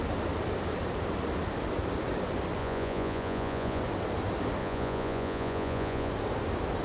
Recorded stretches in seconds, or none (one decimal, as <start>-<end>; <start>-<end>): 0.0-2.6; 3.8-4.6; 6.1-6.8